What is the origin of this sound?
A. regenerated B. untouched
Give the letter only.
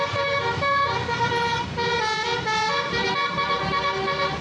B